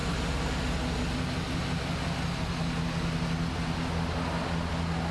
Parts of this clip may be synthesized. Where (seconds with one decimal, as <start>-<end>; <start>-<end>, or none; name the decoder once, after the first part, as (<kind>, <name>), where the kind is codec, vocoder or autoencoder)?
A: none